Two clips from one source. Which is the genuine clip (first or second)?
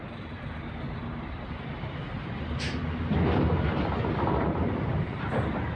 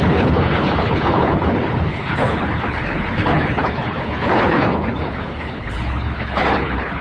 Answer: first